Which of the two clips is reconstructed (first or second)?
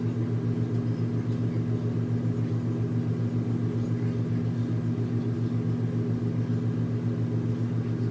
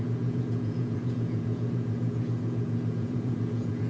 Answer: second